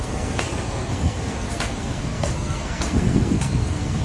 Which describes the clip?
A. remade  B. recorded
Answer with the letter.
A